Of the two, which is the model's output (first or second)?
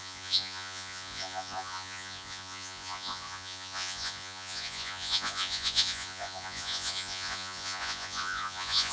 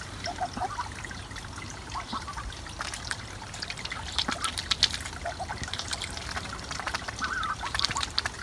first